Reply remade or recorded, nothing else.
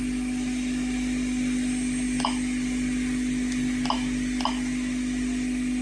recorded